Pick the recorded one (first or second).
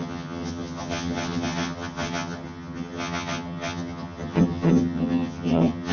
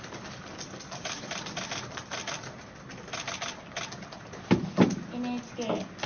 second